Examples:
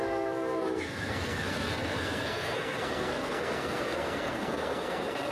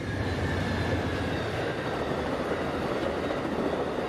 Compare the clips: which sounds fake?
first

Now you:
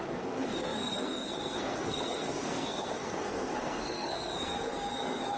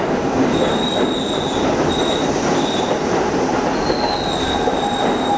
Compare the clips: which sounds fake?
first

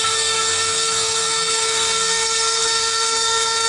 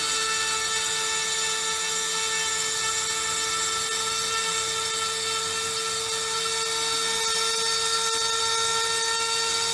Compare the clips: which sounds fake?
first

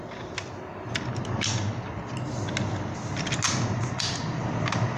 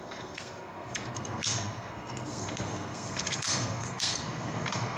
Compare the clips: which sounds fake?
second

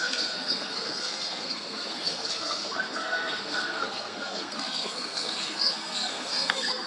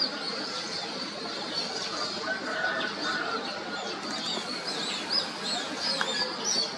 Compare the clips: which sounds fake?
first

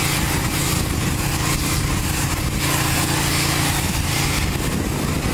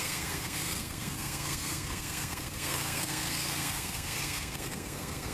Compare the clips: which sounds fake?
second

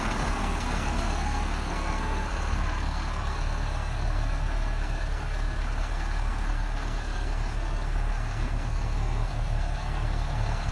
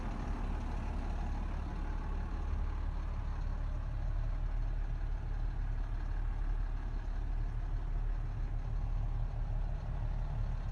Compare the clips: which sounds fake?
first